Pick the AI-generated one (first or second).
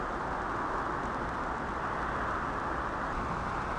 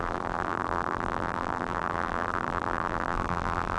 second